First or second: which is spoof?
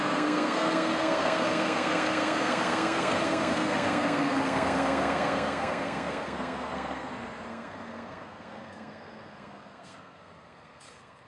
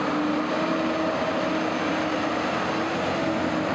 first